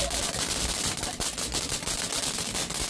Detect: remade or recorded recorded